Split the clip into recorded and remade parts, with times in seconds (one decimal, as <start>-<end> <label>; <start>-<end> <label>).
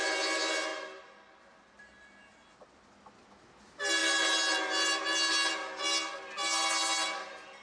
0.0-7.6 recorded